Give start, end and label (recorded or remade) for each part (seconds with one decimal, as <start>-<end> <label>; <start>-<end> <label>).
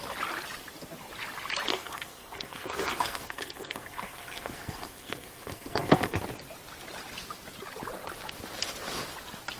0.0-1.7 recorded; 1.7-6.2 remade; 6.2-9.6 recorded